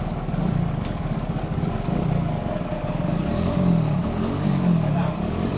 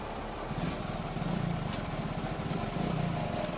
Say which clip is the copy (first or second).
first